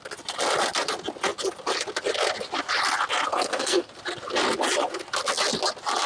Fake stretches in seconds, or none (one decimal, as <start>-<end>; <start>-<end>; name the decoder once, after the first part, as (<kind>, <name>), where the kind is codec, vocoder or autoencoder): 3.3-3.9 (codec, SNAC)